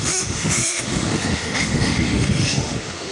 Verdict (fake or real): fake